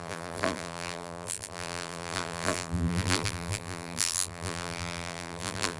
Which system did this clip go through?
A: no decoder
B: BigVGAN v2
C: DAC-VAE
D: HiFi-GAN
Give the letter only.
B